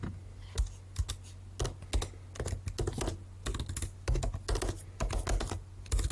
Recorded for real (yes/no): yes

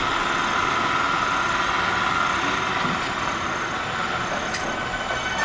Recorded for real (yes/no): yes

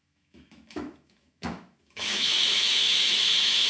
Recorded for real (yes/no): no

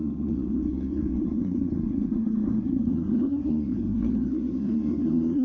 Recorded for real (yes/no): no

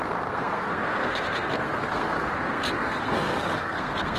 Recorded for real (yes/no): no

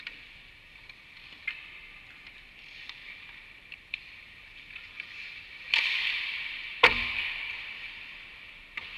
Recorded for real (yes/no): no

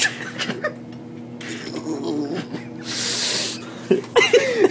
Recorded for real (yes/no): yes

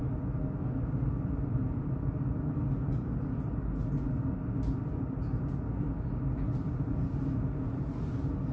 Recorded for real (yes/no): yes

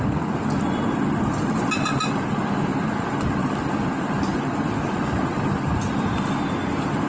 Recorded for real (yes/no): yes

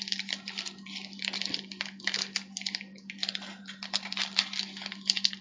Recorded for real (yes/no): yes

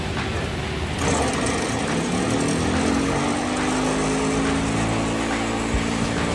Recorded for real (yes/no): yes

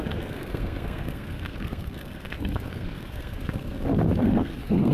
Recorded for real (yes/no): no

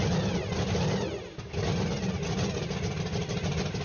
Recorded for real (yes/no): yes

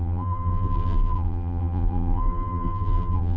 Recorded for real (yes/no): no